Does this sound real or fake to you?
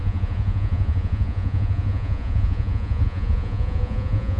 fake